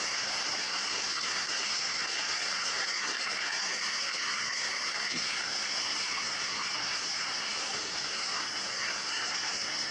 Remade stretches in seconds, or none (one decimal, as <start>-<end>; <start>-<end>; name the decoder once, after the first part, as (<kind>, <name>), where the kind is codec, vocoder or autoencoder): 0.0-9.9 (codec, SNAC)